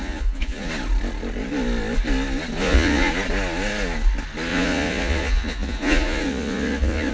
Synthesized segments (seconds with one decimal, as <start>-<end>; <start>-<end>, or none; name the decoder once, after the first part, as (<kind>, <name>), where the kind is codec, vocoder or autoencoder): 0.0-0.7 (vocoder, Vocos); 2.6-3.1; 4.5-7.1